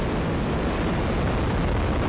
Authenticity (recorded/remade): recorded